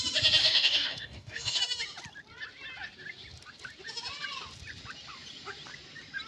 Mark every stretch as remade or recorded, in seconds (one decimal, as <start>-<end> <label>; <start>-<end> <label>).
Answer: 0.0-0.4 recorded; 0.4-1.6 remade; 1.6-6.3 recorded